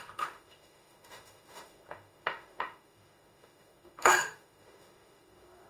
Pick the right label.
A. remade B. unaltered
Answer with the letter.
A